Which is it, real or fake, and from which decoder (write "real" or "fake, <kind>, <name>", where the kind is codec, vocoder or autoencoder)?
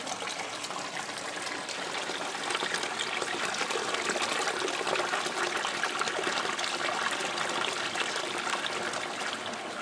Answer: real